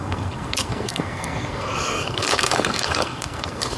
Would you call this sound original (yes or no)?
no